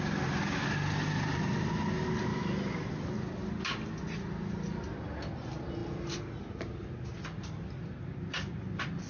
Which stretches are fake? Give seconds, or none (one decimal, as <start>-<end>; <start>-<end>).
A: 2.3-2.9